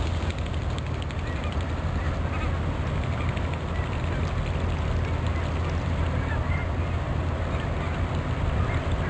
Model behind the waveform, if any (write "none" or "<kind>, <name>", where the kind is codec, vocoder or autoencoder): none